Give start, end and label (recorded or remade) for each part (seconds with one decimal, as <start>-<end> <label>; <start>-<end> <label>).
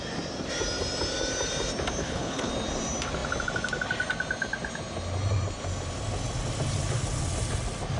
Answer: 0.0-2.0 recorded; 2.0-2.5 remade; 2.5-8.0 recorded